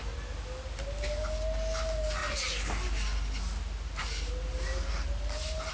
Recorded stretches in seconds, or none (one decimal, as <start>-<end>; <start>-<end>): 0.0-5.7